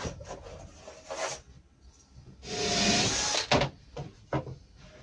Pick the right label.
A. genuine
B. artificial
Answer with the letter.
A